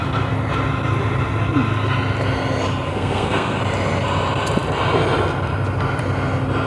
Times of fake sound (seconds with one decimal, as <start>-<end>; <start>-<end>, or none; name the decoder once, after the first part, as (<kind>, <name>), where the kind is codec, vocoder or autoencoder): 2.9-3.6 (codec, SNAC)